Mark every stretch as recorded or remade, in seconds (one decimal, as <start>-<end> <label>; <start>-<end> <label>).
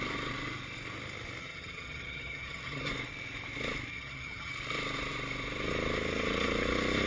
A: 0.0-1.4 recorded; 1.4-2.9 remade; 2.9-3.9 recorded; 3.9-4.5 remade; 4.5-7.1 recorded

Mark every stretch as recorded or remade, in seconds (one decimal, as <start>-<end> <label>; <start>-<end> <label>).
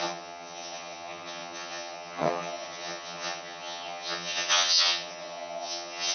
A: 0.0-6.1 remade